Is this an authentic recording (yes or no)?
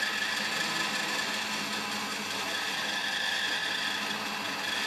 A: yes